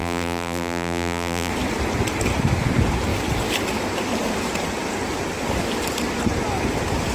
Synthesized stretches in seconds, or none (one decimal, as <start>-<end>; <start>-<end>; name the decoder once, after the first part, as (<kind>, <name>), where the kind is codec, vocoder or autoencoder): 0.0-1.5 (vocoder, BigVGAN v2)